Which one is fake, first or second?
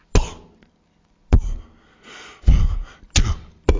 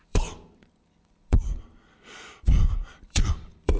second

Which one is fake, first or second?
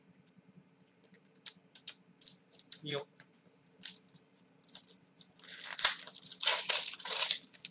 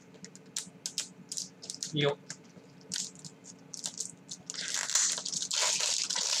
first